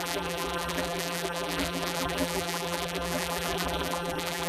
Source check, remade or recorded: remade